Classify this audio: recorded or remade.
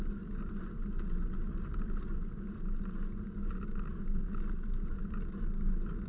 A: recorded